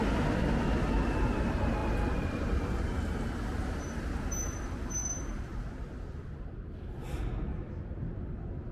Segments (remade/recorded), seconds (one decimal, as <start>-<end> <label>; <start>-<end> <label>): 0.0-1.8 recorded; 1.8-2.8 remade; 2.8-5.0 recorded; 5.0-6.8 remade; 6.8-8.7 recorded